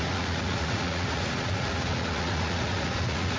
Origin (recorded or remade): remade